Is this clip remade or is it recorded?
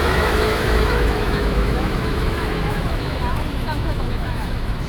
remade